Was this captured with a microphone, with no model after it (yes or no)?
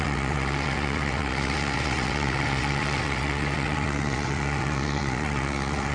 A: no